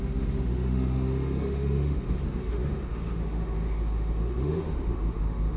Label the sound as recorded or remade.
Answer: remade